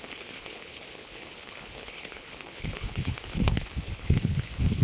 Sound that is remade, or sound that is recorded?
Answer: remade